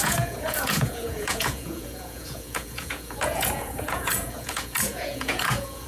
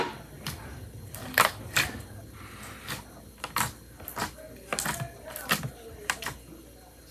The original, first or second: second